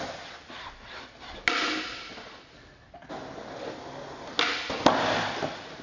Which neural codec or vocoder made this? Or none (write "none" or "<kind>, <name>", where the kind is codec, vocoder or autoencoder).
none